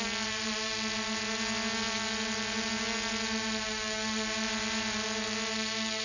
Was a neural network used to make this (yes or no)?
no